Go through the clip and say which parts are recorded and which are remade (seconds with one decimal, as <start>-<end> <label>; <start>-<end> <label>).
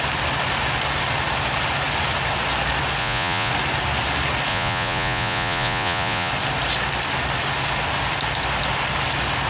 0.0-3.0 recorded; 3.0-3.5 remade; 3.5-4.5 recorded; 4.5-6.3 remade; 6.3-9.5 recorded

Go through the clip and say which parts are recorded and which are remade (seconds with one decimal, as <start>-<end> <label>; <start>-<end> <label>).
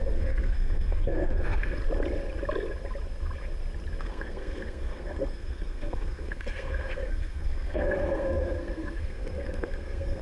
0.0-1.8 remade; 1.8-4.0 recorded; 4.0-10.2 remade